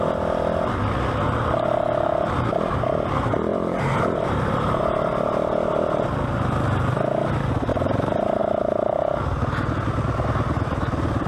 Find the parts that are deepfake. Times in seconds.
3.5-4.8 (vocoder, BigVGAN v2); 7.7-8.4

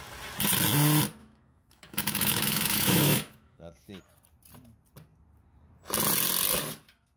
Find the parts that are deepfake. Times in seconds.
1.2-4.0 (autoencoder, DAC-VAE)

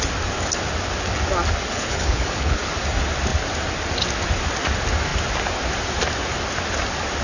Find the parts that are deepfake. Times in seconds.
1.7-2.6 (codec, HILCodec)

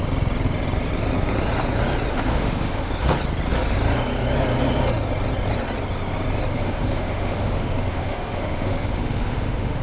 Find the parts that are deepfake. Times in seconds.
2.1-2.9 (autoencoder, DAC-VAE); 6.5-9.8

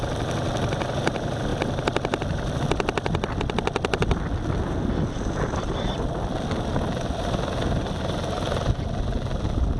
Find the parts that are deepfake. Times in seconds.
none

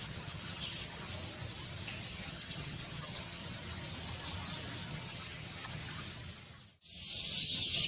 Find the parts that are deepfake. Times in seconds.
0.0-1.1 (vocoder, HiFi-GAN); 2.1-3.4; 4.9-5.8; 7.4-7.9

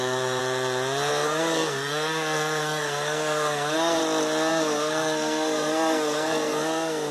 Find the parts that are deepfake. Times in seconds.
0.0-0.4 (codec, SNAC); 1.1-4.0; 4.5-7.1